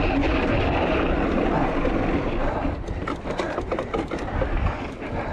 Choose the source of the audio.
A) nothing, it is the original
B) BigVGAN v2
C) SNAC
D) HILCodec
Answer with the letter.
A